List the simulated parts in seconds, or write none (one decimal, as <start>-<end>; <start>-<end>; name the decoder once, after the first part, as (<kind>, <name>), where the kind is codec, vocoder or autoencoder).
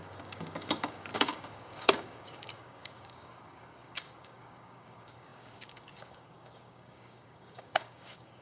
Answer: 0.0-8.4 (codec, DAC)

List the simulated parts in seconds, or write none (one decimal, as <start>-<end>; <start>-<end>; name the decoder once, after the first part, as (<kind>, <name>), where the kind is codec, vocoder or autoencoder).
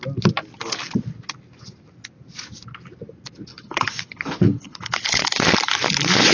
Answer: 3.5-5.2 (codec, HILCodec)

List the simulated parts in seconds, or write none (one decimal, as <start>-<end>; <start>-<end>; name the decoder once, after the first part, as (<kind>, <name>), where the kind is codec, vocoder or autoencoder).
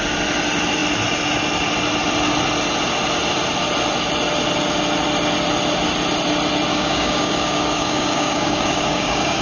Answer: 6.7-9.4 (codec, DAC)